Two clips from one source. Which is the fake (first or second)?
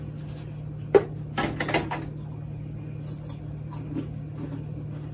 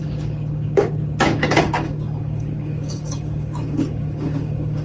second